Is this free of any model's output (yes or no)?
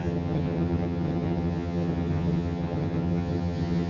no